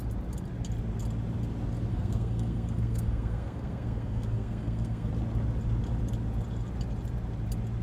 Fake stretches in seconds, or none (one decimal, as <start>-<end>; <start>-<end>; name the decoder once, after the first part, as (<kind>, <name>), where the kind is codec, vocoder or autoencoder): 1.9-5.1 (codec, SNAC)